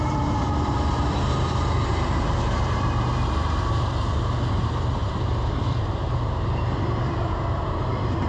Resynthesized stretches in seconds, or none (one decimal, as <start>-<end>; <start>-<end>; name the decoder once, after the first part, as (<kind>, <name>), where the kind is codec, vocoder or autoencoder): 0.0-8.3 (vocoder, BigVGAN v2)